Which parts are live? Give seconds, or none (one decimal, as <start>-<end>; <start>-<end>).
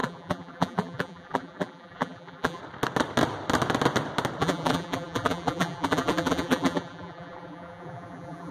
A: 2.6-4.4